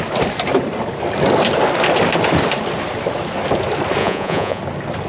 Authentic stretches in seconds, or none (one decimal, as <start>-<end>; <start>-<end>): 0.0-4.0; 4.6-5.1